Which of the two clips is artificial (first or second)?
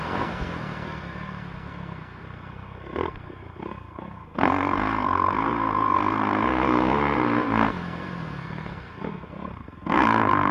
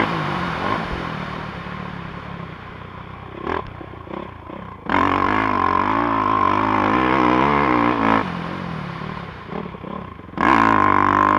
first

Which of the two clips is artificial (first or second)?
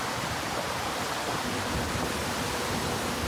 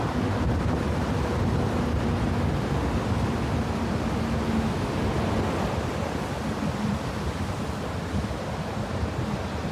first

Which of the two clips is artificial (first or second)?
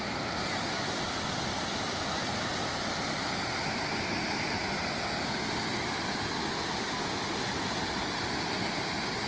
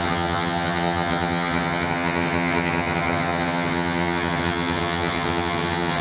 second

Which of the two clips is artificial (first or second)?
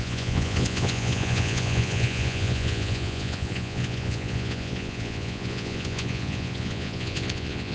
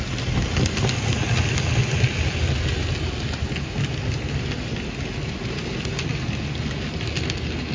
first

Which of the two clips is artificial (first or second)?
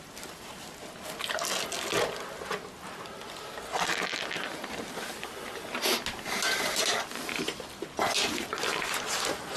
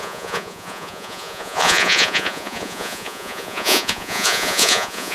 second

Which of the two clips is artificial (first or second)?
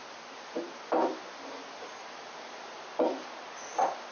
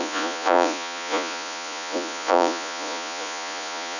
second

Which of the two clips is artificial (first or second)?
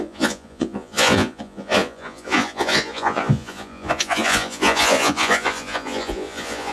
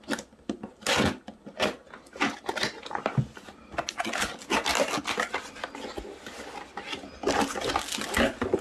first